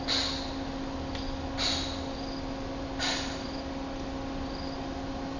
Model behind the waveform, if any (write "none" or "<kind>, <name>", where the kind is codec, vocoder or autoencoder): none